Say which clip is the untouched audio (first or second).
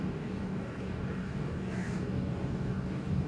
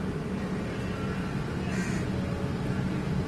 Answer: second